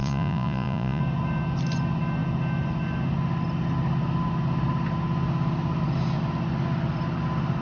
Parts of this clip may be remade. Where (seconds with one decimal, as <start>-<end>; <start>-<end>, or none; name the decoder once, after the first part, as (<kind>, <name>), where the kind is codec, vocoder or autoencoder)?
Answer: 0.0-1.0 (vocoder, Vocos)